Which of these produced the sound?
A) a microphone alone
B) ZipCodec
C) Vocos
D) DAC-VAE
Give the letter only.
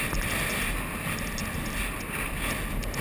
A